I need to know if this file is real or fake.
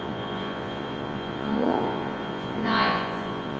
fake